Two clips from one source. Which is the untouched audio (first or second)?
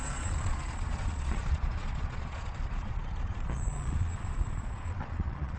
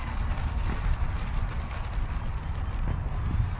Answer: second